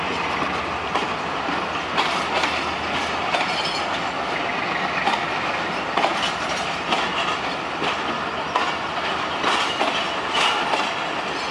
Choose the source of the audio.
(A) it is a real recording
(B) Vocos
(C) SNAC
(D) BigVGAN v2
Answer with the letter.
A